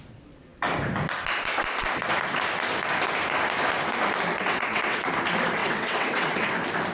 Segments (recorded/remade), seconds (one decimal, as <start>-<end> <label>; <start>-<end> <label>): 0.0-4.3 recorded; 4.3-5.1 remade; 5.1-5.6 recorded; 5.6-6.5 remade; 6.5-6.9 recorded